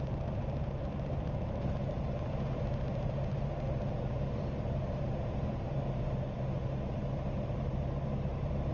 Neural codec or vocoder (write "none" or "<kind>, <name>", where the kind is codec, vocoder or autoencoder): vocoder, BigVGAN v2